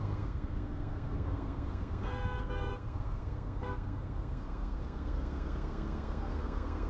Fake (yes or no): yes